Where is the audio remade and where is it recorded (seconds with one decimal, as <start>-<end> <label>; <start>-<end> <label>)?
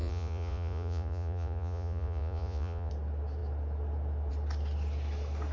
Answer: 0.0-2.9 remade; 2.9-5.5 recorded